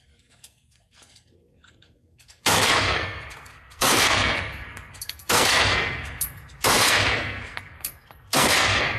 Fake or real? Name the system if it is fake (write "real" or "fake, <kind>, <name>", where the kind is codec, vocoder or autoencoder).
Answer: fake, codec, SNAC